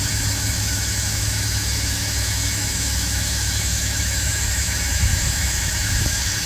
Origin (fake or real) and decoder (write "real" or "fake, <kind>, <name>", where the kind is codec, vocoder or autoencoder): fake, autoencoder, DAC-VAE